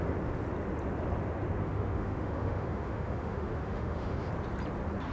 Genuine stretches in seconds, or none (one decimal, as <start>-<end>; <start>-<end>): 0.0-1.6; 4.3-5.1